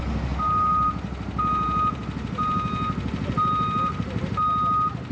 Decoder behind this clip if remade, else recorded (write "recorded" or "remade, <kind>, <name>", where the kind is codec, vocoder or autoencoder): recorded